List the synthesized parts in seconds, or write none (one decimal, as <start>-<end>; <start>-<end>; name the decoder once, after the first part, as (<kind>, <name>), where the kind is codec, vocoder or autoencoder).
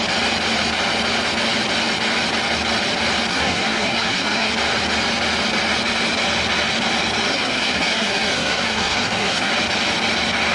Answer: 3.3-4.5 (codec, SNAC); 7.3-9.5